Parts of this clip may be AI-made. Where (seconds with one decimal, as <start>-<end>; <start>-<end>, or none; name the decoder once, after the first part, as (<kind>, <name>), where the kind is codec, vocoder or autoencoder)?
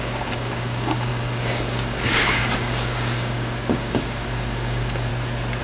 0.0-5.1 (codec, DAC)